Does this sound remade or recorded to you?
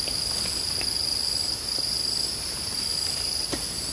recorded